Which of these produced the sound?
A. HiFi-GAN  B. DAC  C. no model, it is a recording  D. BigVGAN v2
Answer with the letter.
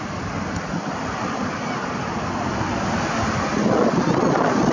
C